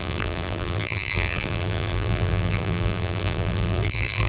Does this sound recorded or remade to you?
remade